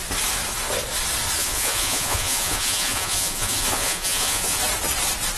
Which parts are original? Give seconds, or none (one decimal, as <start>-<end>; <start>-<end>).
0.0-1.4; 4.6-5.4

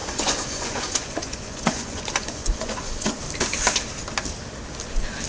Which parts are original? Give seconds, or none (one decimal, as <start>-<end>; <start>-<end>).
3.2-5.3

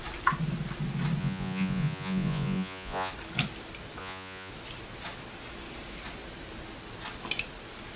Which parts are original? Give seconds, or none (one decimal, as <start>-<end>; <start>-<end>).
0.0-1.2; 3.1-4.0; 4.5-8.0

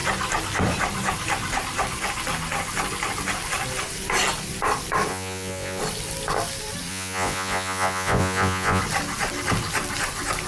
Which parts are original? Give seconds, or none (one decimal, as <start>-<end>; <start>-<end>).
0.0-5.1; 5.8-6.9; 8.8-10.5

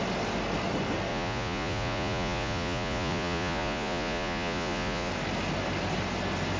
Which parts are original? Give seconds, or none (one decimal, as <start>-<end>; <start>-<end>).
0.0-1.1; 5.1-6.6

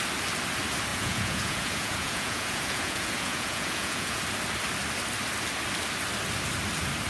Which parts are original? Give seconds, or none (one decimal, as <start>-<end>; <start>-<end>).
0.0-0.9; 4.2-7.1

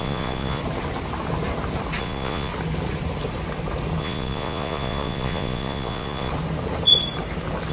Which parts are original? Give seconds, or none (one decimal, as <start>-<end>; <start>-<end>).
0.6-2.0; 2.5-4.0; 6.3-7.7

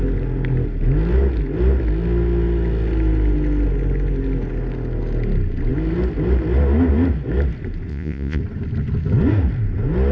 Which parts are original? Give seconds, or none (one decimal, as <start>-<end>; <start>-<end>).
0.0-7.9; 8.4-10.1